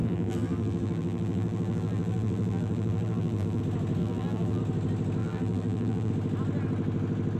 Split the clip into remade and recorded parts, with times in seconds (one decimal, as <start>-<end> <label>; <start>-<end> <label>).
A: 0.0-3.6 remade; 3.6-4.0 recorded; 4.0-4.6 remade; 4.6-5.2 recorded; 5.2-6.1 remade; 6.1-7.4 recorded